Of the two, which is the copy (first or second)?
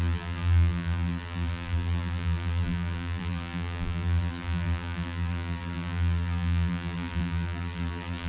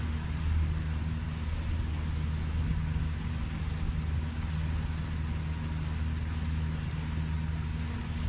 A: first